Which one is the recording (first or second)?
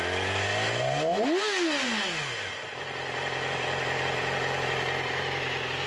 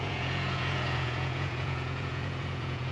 first